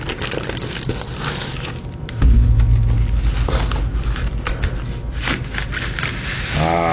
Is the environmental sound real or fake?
real